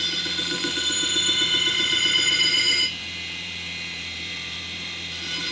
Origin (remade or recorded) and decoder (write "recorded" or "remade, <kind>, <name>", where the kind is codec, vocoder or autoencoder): remade, vocoder, BigVGAN v2